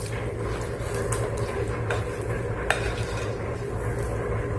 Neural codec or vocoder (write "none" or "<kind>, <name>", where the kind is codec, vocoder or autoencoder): none